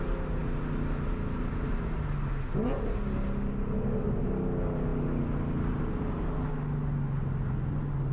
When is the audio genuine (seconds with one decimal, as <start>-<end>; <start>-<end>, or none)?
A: 0.0-8.1